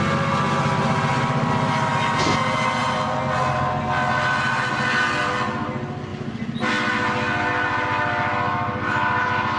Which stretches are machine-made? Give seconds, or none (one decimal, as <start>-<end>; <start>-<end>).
none